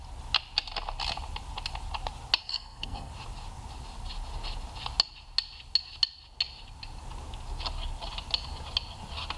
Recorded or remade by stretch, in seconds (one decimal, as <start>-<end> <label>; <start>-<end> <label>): 0.0-2.4 recorded; 2.4-3.1 remade; 3.1-9.4 recorded

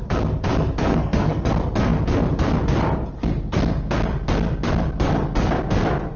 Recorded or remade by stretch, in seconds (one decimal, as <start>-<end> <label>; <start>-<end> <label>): 0.0-0.9 recorded; 0.9-1.5 remade; 1.5-6.2 recorded